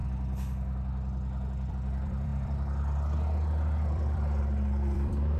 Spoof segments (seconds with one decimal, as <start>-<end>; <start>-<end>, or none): 1.7-5.4